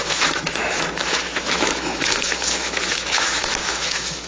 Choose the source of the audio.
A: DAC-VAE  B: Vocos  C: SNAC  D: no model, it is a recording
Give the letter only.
A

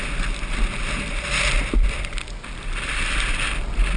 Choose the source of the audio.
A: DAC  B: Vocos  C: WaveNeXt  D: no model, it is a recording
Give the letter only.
D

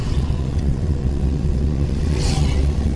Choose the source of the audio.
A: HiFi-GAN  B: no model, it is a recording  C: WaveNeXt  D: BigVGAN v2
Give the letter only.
C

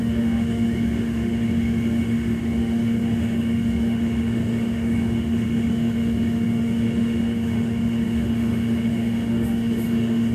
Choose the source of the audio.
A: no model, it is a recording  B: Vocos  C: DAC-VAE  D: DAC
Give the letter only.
C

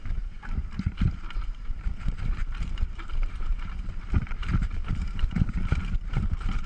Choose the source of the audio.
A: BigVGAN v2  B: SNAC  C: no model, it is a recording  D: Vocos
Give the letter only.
A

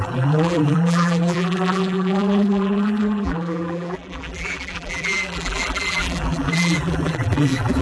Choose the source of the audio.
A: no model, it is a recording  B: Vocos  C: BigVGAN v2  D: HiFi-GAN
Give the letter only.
C